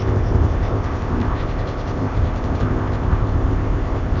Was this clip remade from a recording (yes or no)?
yes